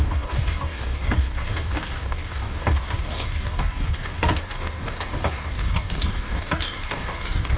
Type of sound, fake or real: fake